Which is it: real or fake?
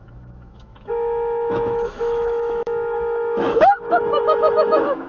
fake